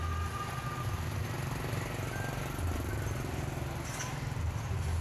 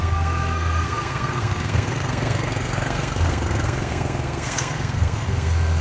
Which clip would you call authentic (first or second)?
first